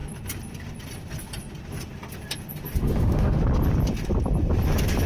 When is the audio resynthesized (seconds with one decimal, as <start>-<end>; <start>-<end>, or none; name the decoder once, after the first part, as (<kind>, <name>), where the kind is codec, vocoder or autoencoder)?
2.8-3.4 (autoencoder, DAC-VAE)

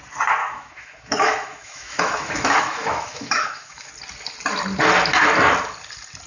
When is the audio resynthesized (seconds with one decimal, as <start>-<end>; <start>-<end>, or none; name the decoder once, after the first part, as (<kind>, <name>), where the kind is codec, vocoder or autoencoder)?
0.4-3.9 (autoencoder, DAC-VAE)

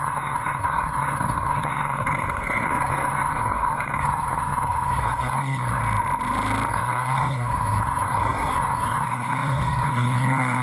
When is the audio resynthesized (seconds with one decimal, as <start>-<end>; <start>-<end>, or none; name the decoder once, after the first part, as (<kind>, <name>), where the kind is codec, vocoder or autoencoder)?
0.0-5.8 (codec, SNAC); 6.7-10.6

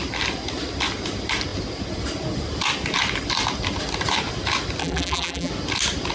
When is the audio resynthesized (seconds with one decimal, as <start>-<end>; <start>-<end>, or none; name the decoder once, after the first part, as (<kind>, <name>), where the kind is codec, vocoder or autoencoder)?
4.8-5.5 (vocoder, BigVGAN v2)